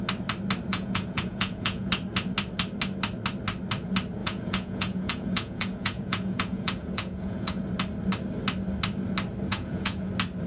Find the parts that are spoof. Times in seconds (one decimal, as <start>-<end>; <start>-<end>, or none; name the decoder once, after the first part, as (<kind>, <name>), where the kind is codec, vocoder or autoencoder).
0.7-1.9 (vocoder, Vocos); 4.2-7.6; 9.5-10.1